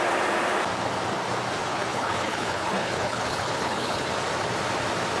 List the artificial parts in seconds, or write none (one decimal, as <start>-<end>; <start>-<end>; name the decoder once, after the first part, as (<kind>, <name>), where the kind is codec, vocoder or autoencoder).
1.7-4.1 (codec, HILCodec)